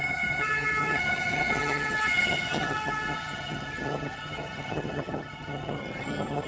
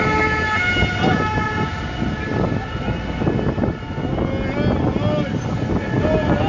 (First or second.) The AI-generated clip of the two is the first